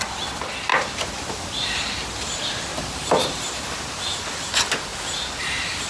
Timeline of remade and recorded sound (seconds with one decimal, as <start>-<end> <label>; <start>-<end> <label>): 0.0-0.7 recorded; 0.7-1.3 remade; 1.3-2.7 recorded; 2.7-4.0 remade; 4.0-5.9 recorded